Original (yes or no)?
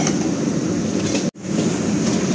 yes